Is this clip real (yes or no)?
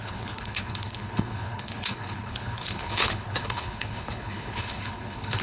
no